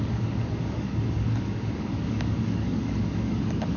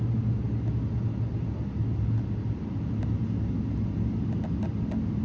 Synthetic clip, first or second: first